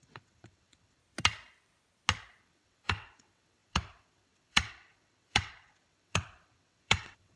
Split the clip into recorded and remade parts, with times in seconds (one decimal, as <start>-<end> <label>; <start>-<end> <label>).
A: 0.0-1.0 remade; 1.0-2.4 recorded; 2.4-7.4 remade